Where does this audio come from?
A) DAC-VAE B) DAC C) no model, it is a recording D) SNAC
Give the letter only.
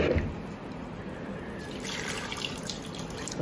C